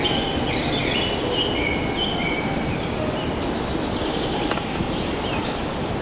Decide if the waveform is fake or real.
real